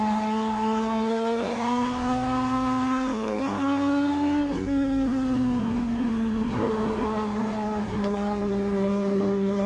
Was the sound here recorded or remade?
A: remade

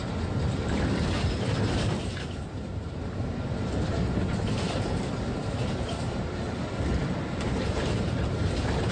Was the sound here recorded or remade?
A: remade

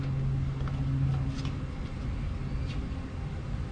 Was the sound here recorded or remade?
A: recorded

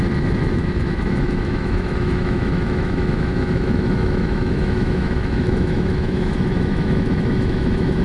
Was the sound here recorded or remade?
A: remade